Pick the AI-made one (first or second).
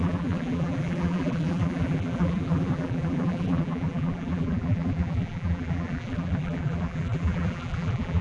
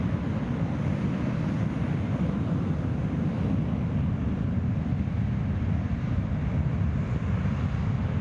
first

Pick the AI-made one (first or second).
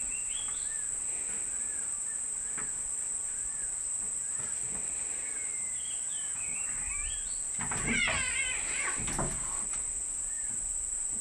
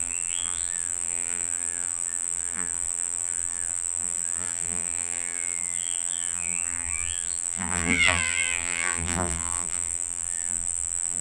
second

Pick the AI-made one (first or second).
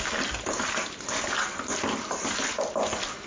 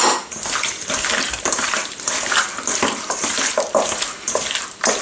second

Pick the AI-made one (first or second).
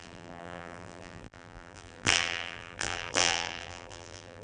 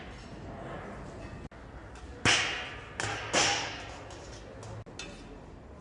first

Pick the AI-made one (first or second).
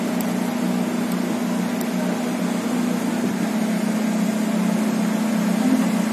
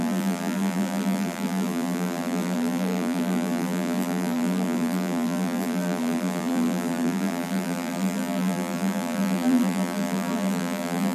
second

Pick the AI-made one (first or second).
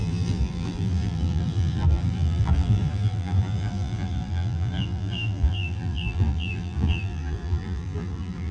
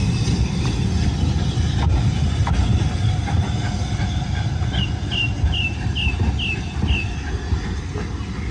first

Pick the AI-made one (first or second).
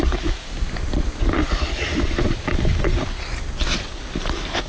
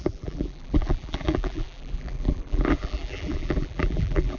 second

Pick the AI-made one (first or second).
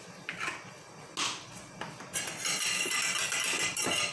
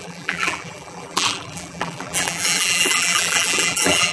second